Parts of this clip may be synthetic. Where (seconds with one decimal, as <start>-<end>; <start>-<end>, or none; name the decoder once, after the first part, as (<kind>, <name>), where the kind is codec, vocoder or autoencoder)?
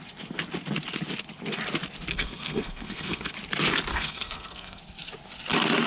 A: 2.1-3.3 (codec, SNAC); 3.9-4.8